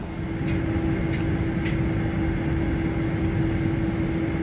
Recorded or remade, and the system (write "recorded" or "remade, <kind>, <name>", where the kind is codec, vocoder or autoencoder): recorded